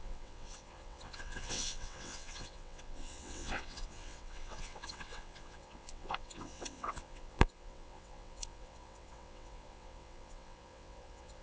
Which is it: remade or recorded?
remade